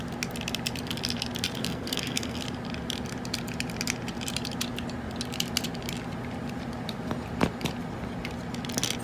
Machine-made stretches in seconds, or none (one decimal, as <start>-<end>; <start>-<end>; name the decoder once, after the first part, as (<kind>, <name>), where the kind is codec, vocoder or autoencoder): 1.6-2.4 (codec, SNAC)